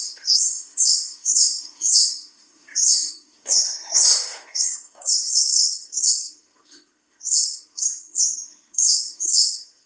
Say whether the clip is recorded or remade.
remade